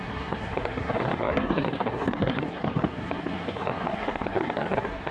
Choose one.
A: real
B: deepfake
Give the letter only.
B